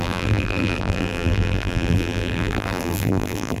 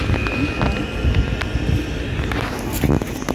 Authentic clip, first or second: second